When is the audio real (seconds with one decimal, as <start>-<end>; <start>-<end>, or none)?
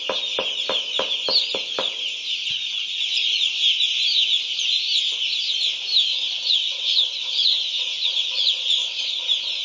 0.0-6.1; 9.1-9.6